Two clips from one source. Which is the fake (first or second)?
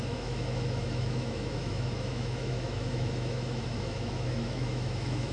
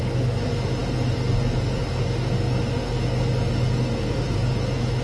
first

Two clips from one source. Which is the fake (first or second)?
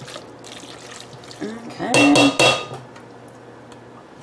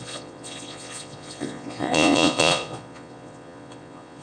second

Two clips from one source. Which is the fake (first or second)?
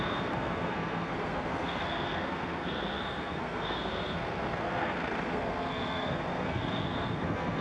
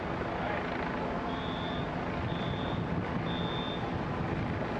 first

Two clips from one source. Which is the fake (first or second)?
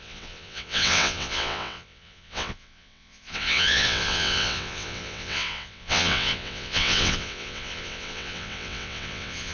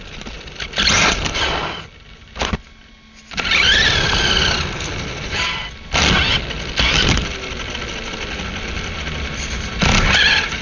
first